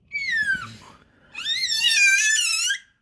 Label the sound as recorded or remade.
remade